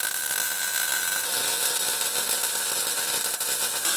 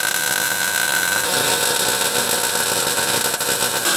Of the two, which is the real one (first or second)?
second